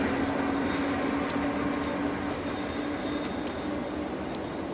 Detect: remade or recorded recorded